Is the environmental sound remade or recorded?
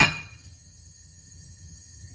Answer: remade